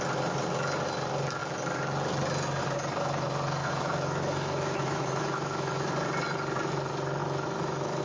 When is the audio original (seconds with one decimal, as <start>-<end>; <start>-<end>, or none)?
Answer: 0.0-3.6; 5.9-7.2